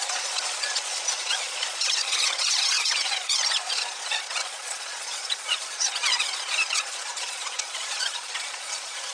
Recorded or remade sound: remade